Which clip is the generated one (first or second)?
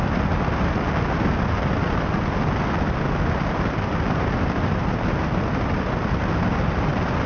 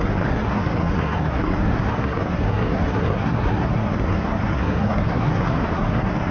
second